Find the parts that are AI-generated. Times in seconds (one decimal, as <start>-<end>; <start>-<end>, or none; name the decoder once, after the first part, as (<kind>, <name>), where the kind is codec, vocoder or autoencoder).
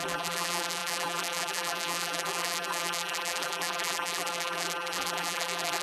0.0-5.8 (vocoder, BigVGAN v2)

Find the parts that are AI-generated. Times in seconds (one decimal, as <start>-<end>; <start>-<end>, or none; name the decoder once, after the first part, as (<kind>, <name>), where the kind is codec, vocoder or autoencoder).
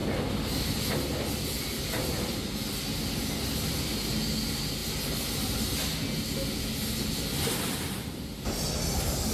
none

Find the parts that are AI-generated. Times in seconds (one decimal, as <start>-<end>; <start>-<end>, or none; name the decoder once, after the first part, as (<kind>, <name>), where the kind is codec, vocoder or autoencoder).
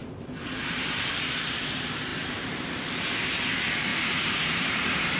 3.9-5.2 (vocoder, BigVGAN v2)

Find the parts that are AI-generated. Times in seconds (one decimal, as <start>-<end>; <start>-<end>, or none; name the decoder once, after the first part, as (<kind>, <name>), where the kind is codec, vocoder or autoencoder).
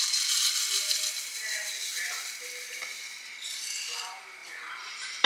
none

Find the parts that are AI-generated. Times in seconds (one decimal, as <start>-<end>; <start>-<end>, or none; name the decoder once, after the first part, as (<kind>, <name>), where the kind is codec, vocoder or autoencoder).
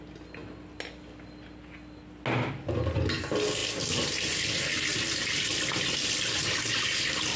none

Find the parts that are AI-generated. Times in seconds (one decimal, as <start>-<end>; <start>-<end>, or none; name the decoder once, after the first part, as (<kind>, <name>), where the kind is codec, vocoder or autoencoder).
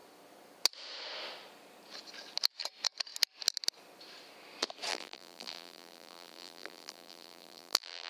4.9-8.1 (vocoder, BigVGAN v2)